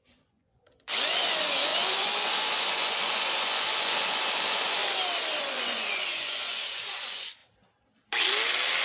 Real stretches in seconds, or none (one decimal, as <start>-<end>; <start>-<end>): 4.8-5.4; 7.4-8.8